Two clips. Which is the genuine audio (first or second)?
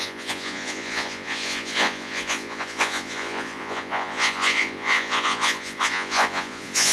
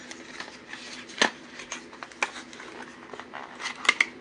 second